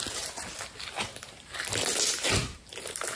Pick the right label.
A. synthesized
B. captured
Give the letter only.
B